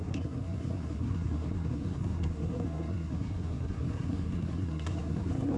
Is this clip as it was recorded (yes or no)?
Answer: no